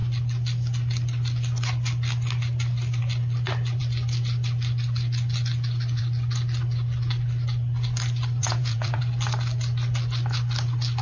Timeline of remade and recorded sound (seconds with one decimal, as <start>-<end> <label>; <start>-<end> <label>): 0.0-8.4 recorded; 8.4-9.0 remade; 9.0-11.0 recorded